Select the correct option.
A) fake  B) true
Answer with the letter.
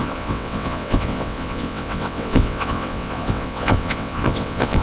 A